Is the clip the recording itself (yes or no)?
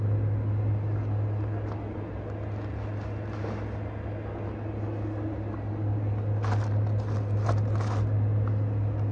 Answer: yes